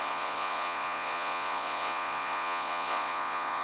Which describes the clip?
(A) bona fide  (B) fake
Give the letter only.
B